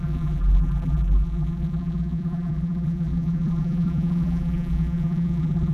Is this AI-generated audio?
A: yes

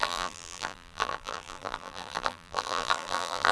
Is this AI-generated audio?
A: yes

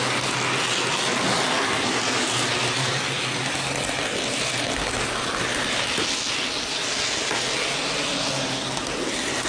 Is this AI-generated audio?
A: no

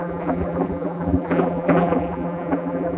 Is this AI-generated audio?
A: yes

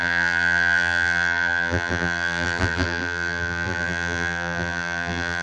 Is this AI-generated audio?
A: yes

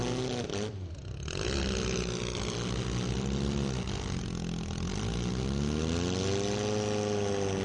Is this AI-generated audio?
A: no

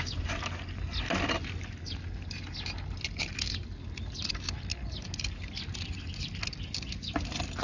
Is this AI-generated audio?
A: no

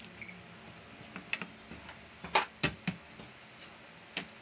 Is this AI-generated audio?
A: no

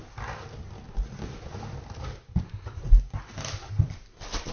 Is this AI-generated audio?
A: no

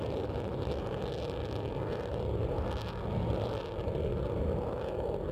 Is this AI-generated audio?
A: no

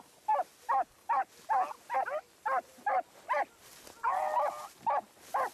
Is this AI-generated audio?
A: no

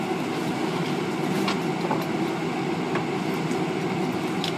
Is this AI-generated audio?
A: no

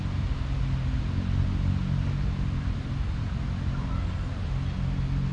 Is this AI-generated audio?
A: no